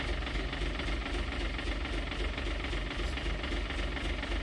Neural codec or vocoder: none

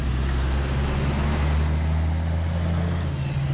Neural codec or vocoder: none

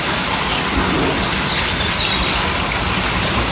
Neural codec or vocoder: none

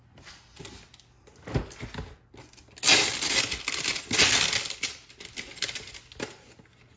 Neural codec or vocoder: none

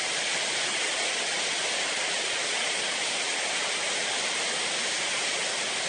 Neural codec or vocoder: none